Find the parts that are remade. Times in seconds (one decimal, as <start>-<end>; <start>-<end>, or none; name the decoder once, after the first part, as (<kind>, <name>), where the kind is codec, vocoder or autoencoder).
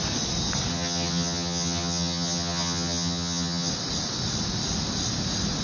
0.7-3.7 (vocoder, HiFi-GAN)